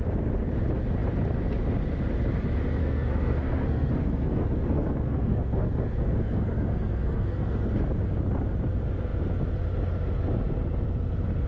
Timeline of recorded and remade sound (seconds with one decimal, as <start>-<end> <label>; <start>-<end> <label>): 0.0-2.8 recorded; 2.8-7.7 remade; 7.7-11.5 recorded